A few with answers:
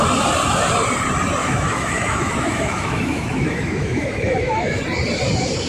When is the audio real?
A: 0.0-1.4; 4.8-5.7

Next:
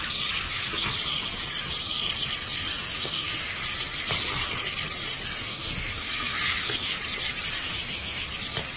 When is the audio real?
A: 0.0-2.8; 3.6-5.4; 7.0-7.6; 8.2-8.8

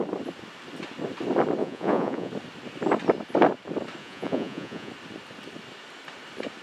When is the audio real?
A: 0.0-1.6; 2.3-4.0; 4.9-6.6

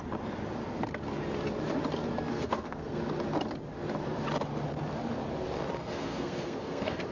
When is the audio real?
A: 0.0-2.3; 3.0-5.8